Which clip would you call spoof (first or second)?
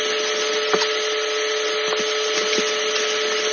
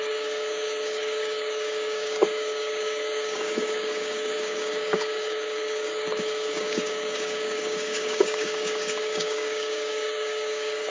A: second